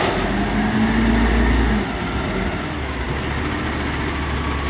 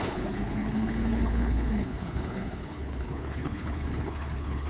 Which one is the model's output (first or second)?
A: second